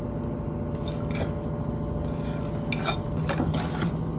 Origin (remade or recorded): recorded